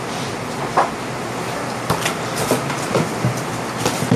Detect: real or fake real